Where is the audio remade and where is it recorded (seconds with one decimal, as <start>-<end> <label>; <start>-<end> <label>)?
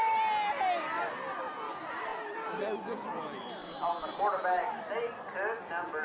0.0-2.1 recorded; 2.1-2.6 remade; 2.6-3.6 recorded; 3.6-4.7 remade; 4.7-6.0 recorded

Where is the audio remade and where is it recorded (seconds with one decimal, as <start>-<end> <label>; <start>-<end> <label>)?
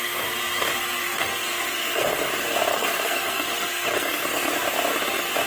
0.0-1.0 recorded; 1.0-2.3 remade; 2.3-2.7 recorded; 2.7-4.5 remade; 4.5-5.5 recorded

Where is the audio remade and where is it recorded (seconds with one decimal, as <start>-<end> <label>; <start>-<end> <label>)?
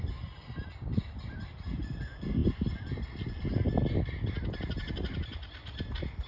0.0-0.9 recorded; 0.9-1.5 remade; 1.5-6.3 recorded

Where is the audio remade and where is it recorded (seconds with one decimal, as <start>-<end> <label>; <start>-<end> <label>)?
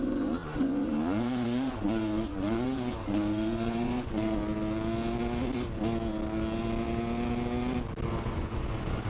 0.0-4.4 remade; 4.4-8.2 recorded; 8.2-9.1 remade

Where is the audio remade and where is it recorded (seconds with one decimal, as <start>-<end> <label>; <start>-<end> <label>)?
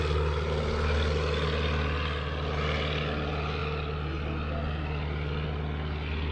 0.0-6.3 recorded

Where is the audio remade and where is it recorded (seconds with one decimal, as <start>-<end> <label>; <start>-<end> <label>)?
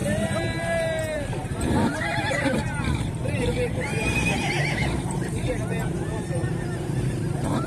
0.0-7.7 remade